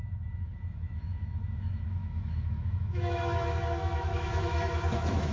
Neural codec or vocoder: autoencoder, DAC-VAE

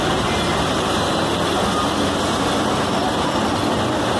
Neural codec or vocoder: none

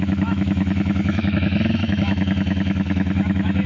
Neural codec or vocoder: autoencoder, DAC-VAE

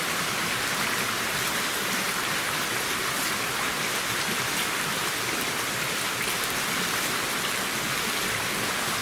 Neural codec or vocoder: none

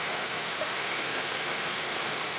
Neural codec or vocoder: autoencoder, DAC-VAE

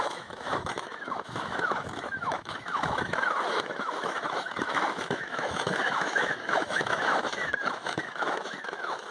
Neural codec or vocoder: autoencoder, DAC-VAE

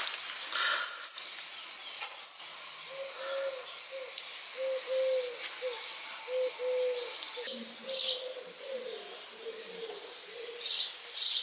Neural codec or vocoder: none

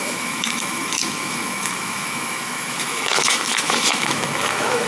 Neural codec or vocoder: autoencoder, DAC-VAE